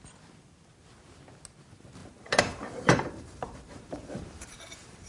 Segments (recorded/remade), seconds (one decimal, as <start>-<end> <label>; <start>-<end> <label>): 0.0-2.0 recorded; 2.0-5.1 remade